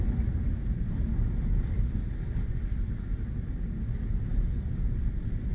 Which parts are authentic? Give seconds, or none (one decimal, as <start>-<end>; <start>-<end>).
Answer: 0.0-5.5